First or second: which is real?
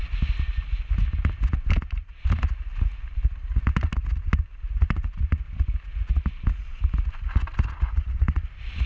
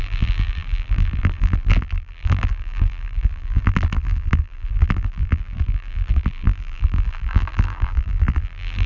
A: first